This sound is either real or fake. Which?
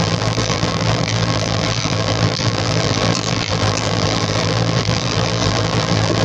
fake